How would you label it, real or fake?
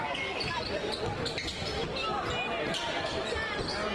real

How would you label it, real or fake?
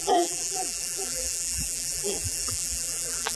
fake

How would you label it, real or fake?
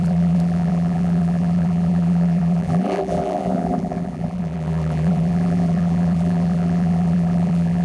fake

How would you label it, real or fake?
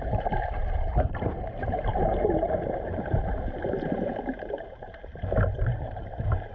fake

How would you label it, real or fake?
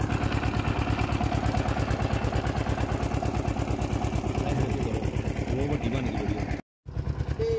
real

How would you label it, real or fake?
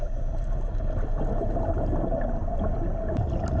real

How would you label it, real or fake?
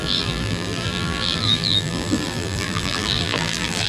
fake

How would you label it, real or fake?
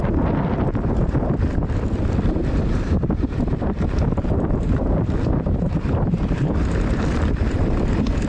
fake